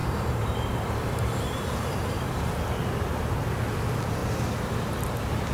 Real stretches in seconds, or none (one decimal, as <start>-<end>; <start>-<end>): 2.5-5.5